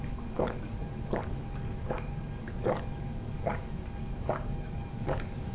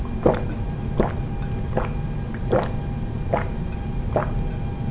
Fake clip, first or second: first